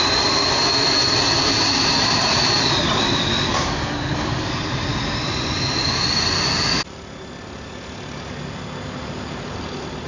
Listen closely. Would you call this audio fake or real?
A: real